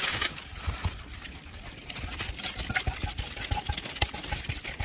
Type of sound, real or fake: real